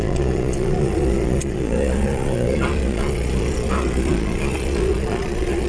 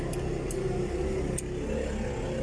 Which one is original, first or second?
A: second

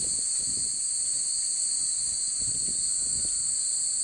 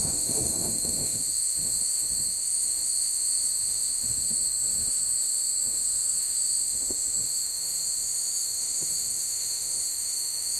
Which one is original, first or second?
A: first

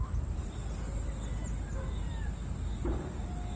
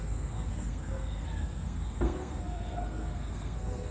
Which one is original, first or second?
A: first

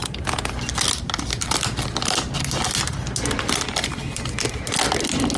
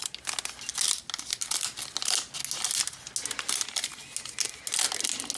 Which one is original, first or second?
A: second